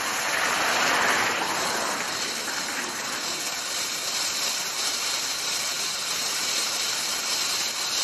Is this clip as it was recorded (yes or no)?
no